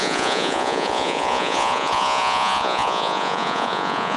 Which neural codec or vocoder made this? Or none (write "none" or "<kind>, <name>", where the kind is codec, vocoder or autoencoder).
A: vocoder, Vocos